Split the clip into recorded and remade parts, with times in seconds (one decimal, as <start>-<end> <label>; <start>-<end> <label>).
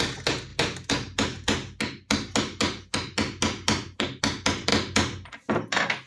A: 0.0-6.1 recorded